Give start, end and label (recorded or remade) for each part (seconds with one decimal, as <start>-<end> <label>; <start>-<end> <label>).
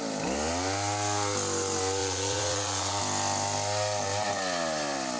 0.0-2.0 recorded; 2.0-3.0 remade; 3.0-5.2 recorded